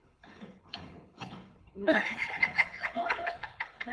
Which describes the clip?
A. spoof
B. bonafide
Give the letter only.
A